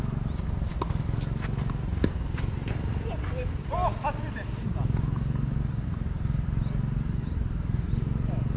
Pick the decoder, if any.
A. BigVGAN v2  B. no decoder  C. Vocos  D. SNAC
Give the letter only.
B